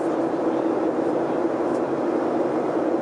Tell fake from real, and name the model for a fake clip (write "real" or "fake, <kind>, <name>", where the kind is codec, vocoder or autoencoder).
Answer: real